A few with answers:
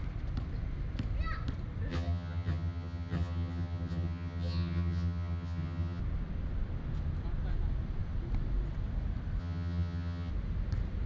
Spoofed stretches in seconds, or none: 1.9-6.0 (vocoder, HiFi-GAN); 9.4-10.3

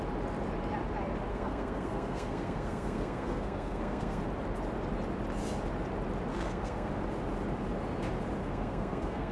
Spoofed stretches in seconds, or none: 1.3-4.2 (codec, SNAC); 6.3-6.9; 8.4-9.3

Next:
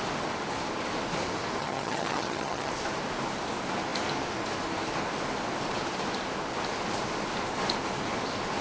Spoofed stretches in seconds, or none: 1.6-2.7 (vocoder, HiFi-GAN)

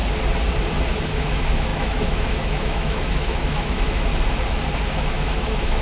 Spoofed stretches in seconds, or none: 0.9-4.1 (autoencoder, DAC-VAE); 4.9-5.8